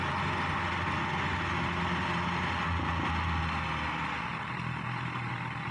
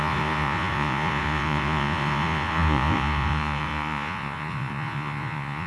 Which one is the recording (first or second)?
first